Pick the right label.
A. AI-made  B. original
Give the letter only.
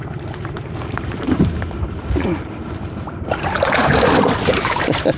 A